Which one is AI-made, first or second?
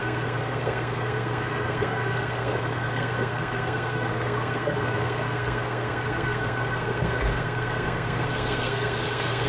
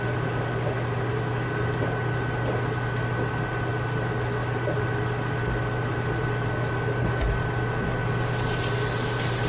first